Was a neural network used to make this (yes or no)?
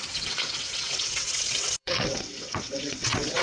yes